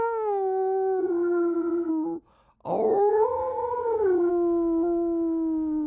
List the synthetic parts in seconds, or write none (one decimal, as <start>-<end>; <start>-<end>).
1.0-1.9; 3.1-4.3